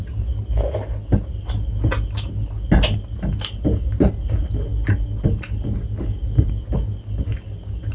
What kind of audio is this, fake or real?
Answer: real